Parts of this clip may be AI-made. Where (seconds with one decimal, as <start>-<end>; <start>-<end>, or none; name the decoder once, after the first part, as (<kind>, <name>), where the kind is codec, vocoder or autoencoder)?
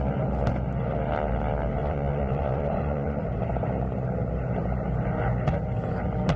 1.8-3.2 (vocoder, Vocos)